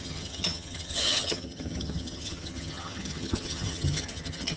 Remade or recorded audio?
remade